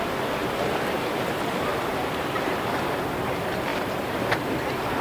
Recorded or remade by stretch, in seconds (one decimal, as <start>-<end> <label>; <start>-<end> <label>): 0.0-0.4 remade; 0.4-1.1 recorded; 1.1-3.7 remade; 3.7-4.3 recorded; 4.3-5.0 remade